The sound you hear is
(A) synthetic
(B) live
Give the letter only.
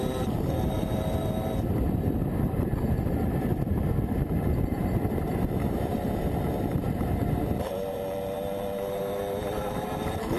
A